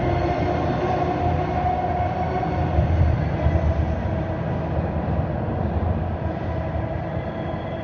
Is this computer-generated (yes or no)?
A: no